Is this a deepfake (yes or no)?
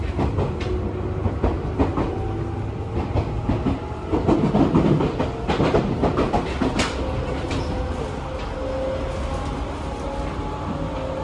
no